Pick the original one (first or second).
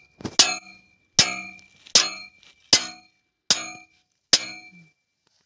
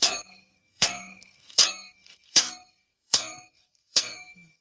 first